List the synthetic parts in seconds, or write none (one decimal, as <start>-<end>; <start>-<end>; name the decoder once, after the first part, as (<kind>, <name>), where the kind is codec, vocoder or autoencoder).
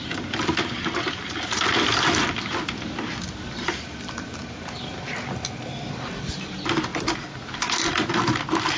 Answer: none